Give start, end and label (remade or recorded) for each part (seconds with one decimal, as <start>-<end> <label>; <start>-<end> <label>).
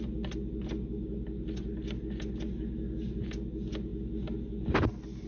0.0-5.3 recorded